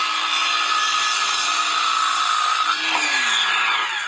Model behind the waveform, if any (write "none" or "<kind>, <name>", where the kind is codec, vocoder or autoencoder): vocoder, BigVGAN v2